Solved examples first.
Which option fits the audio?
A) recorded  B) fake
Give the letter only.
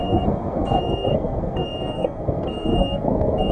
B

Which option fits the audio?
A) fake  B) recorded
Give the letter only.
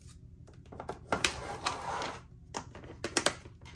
B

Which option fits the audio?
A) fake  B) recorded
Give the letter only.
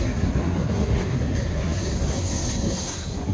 A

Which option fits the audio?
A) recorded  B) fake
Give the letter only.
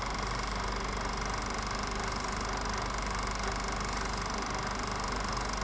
A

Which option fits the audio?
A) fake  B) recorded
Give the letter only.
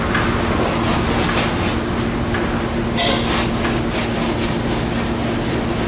B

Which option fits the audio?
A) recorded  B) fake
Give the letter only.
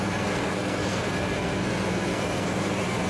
B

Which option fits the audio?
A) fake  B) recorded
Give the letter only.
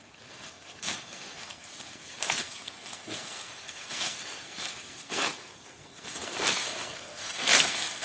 A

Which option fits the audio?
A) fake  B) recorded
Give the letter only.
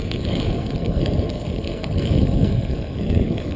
A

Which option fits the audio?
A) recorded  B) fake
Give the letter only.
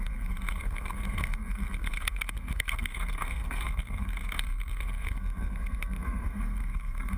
B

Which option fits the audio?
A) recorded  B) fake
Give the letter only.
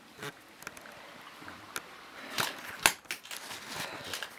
A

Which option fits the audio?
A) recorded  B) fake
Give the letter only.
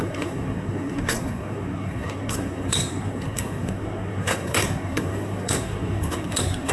B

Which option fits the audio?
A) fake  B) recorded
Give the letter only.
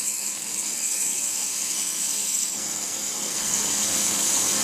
A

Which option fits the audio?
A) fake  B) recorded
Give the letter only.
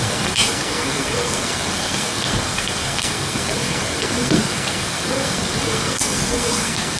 A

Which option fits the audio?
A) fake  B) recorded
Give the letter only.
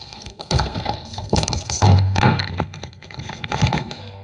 A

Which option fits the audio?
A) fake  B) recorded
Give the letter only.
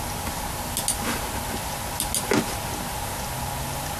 B